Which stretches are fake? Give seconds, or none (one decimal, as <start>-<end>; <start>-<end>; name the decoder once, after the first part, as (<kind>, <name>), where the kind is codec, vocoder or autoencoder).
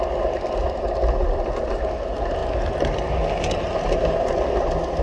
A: 0.6-1.6 (vocoder, BigVGAN v2)